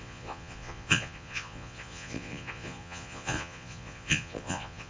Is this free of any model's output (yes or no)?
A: no